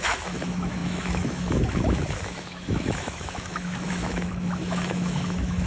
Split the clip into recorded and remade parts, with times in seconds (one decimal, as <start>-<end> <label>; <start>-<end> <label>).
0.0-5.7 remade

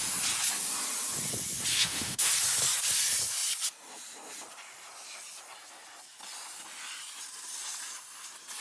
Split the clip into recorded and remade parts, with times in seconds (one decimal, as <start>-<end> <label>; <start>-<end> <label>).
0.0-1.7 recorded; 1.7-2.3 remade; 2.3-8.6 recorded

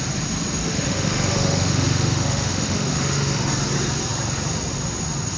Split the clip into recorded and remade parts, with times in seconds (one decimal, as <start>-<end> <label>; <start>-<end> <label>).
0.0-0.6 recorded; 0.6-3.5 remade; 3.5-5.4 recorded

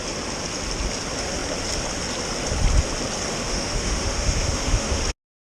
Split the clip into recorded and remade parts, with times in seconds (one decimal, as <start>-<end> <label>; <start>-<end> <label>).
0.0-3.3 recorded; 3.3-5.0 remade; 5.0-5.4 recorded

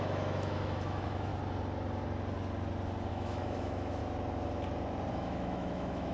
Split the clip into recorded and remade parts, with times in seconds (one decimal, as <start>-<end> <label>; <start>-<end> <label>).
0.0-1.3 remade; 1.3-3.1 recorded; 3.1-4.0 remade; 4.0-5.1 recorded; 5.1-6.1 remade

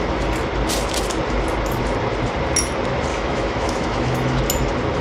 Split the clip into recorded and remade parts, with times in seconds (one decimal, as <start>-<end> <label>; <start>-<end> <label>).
0.0-3.1 recorded; 3.1-4.4 remade; 4.4-5.0 recorded

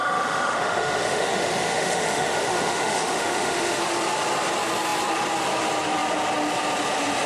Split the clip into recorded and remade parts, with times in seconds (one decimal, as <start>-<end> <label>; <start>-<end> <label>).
0.0-3.8 remade; 3.8-7.3 recorded